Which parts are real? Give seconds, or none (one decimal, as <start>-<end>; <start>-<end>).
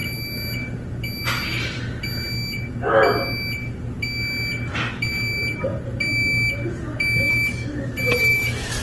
0.0-5.1; 5.7-7.3